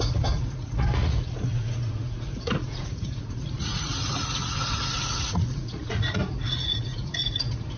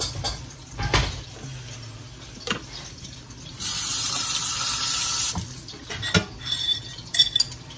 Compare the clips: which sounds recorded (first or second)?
second